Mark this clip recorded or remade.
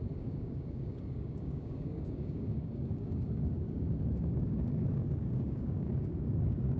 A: remade